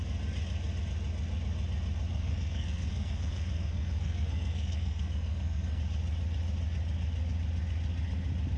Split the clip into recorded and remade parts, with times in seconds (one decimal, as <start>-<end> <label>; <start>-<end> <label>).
0.0-2.1 recorded; 2.1-5.8 remade; 5.8-8.6 recorded